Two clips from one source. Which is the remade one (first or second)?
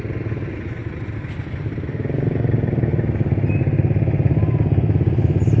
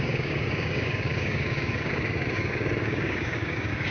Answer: second